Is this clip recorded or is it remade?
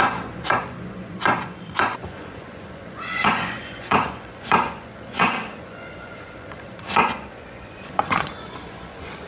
remade